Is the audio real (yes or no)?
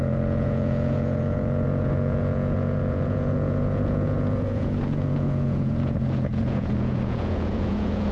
no